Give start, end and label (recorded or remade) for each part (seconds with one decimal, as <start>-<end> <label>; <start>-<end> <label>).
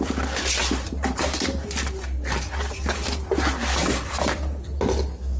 0.0-5.4 recorded